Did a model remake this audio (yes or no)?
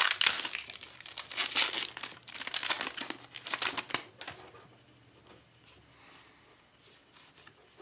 no